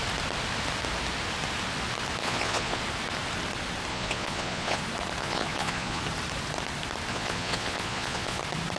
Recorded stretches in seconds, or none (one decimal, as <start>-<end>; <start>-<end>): 0.0-2.2; 2.8-3.9; 4.8-5.2; 6.0-7.1; 8.4-8.8